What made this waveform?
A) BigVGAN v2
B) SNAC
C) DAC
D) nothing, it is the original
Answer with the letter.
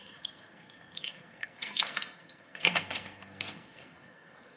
B